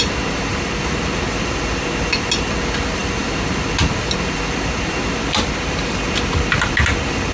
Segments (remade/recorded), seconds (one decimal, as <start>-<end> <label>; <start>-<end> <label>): 0.0-7.3 recorded